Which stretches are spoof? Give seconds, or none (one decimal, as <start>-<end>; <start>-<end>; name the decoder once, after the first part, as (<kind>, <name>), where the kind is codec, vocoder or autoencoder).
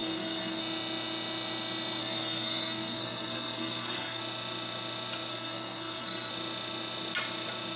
0.0-0.6 (codec, SNAC); 2.0-4.2; 5.3-6.3